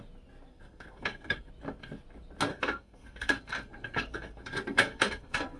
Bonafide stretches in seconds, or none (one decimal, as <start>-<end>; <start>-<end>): 0.0-0.5; 1.5-2.5